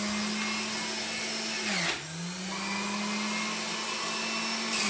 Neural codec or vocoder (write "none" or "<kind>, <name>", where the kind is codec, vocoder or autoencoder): none